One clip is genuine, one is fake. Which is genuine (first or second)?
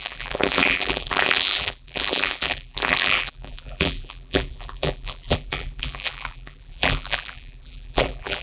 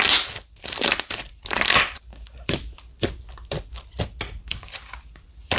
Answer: second